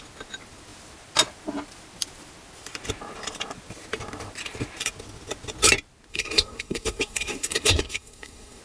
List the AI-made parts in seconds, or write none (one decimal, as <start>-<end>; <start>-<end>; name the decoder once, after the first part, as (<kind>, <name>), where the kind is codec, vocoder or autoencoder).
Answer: 6.1-8.6 (codec, SNAC)